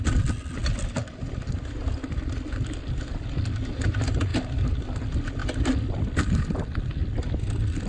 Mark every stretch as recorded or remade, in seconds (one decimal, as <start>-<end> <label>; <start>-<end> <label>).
0.0-7.9 recorded